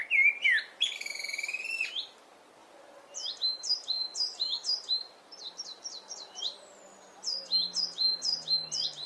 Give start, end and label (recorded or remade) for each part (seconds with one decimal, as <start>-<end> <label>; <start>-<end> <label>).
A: 0.0-9.1 recorded